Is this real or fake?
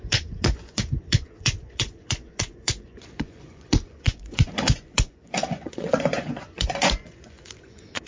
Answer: fake